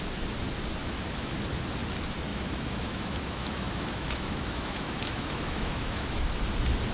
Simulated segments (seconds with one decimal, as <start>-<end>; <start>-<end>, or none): 0.8-1.4; 2.3-6.3